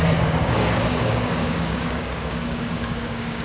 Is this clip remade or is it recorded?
remade